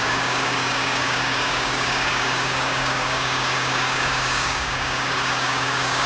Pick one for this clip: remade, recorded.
remade